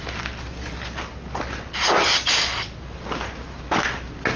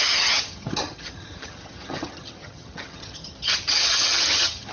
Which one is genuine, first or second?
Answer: first